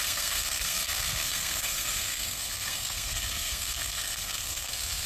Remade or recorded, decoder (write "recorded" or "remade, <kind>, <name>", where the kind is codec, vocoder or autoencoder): remade, codec, SNAC